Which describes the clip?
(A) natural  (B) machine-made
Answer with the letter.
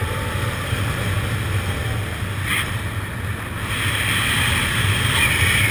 A